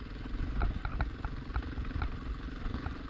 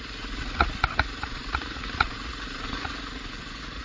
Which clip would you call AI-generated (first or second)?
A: second